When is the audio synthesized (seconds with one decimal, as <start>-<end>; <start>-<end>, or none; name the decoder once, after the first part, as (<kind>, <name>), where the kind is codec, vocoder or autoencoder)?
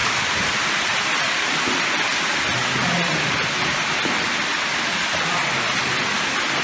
none